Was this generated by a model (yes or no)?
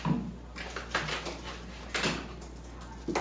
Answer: no